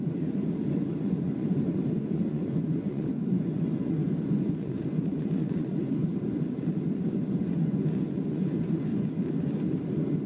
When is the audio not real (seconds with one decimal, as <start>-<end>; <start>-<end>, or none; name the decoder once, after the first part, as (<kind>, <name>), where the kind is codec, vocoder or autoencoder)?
0.0-6.0 (vocoder, Vocos); 6.8-8.9